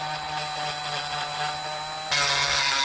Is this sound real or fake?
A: real